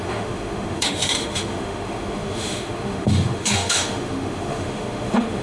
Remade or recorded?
remade